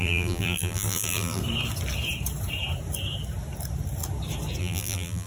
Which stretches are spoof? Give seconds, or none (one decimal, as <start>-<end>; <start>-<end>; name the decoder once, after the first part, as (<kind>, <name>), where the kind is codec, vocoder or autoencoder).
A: 0.0-1.4 (vocoder, BigVGAN v2); 4.6-5.3